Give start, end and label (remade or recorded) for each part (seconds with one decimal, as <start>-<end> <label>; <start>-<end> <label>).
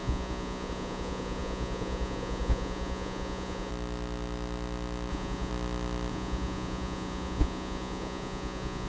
0.0-3.7 remade; 3.7-5.1 recorded; 5.1-5.5 remade; 5.5-6.1 recorded; 6.1-8.9 remade